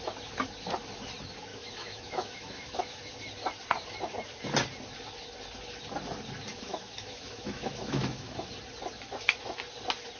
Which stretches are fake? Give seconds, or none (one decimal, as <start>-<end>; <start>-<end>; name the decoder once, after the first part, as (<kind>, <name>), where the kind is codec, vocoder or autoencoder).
1.5-3.2 (autoencoder, DAC-VAE); 6.5-8.5